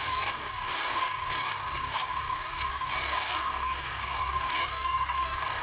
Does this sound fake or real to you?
fake